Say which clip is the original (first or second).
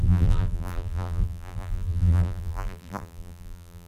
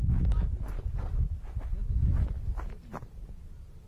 second